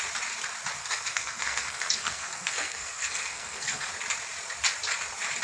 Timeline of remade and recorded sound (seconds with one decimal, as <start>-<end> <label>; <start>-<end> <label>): 0.0-0.8 recorded; 0.8-3.9 remade; 3.9-5.4 recorded